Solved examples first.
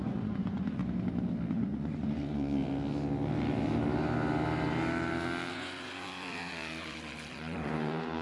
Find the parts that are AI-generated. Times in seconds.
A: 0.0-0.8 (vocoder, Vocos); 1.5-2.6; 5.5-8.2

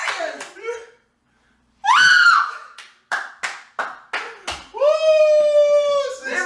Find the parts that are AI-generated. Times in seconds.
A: 0.0-3.3 (vocoder, BigVGAN v2)